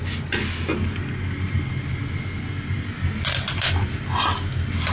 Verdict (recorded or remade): recorded